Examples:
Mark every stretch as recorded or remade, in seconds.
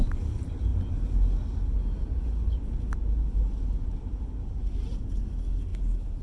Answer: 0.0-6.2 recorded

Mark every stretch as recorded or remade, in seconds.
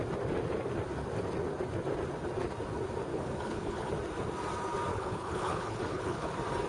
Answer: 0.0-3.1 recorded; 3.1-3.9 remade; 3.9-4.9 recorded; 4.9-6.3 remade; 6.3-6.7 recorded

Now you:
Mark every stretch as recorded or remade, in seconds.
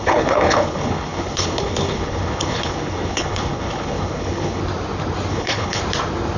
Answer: 0.0-4.6 remade; 4.6-5.3 recorded; 5.3-5.8 remade; 5.8-6.4 recorded